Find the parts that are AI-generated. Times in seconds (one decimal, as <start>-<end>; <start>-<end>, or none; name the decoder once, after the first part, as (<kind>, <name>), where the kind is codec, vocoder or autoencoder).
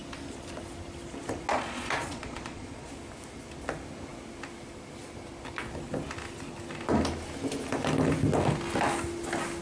1.5-2.9 (vocoder, Vocos)